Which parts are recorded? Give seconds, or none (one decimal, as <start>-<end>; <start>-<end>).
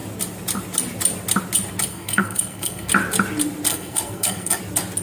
0.0-1.9; 2.9-3.7; 4.6-5.0